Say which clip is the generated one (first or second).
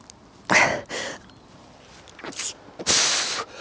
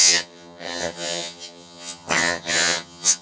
second